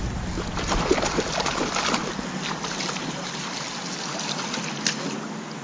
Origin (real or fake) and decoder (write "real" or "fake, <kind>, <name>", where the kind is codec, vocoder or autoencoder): real